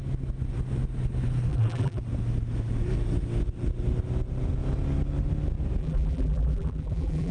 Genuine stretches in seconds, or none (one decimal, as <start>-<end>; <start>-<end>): 0.0-1.5; 2.0-5.8

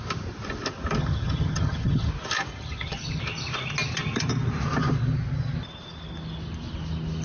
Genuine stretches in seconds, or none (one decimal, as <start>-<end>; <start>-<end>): 0.0-1.0; 2.1-2.5; 3.2-7.2

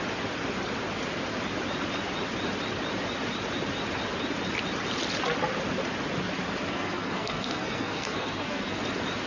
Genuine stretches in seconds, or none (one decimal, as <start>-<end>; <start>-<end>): 0.0-6.7; 8.8-9.3

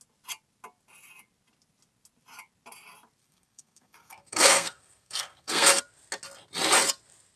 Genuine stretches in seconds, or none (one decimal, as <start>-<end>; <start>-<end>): 0.0-3.2; 5.8-7.4

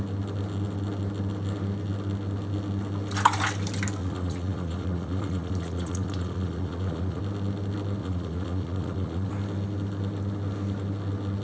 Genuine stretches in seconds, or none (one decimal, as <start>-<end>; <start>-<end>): 0.0-4.0; 7.2-8.0; 9.3-11.4